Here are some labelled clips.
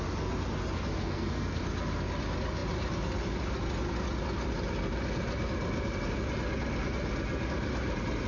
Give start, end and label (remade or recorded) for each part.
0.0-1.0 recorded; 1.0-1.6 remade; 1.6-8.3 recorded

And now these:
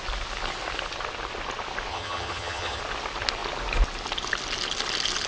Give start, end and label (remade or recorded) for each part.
0.0-1.9 recorded; 1.9-2.8 remade; 2.8-5.3 recorded